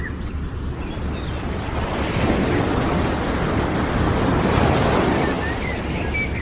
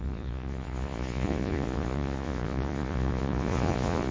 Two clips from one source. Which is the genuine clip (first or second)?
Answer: first